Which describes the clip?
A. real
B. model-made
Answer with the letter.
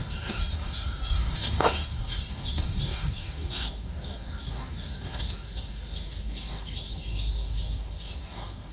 B